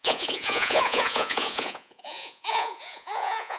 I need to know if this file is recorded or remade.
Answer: remade